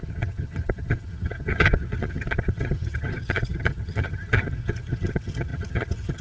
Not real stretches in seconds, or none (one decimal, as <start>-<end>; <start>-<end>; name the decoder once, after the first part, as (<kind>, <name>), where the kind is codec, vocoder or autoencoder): 0.0-6.2 (vocoder, HiFi-GAN)